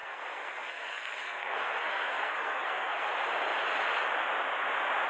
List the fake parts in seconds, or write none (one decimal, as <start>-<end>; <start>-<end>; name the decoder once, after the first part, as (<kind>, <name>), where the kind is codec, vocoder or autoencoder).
0.0-3.1 (codec, SNAC)